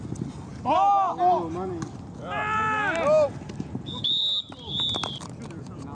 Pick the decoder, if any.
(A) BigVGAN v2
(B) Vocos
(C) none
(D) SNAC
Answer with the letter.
C